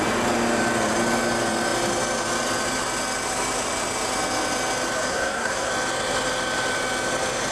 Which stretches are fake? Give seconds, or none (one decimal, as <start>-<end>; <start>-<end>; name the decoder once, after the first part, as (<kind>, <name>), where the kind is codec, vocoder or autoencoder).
5.1-5.7 (codec, SNAC)